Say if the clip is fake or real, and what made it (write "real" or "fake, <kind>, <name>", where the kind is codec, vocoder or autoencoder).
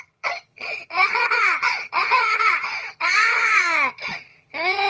fake, vocoder, HiFi-GAN